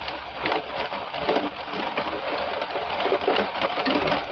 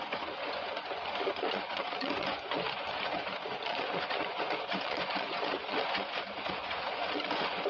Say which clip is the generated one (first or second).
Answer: second